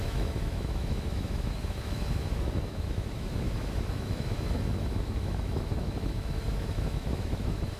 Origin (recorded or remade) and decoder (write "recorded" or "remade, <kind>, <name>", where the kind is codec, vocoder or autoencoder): remade, autoencoder, DAC-VAE